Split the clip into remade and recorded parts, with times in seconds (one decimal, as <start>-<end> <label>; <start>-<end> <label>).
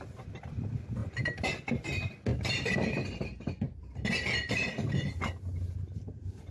0.0-2.3 recorded; 2.3-6.5 remade